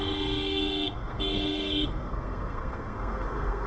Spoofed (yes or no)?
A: yes